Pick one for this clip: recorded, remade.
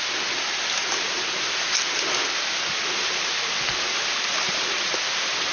recorded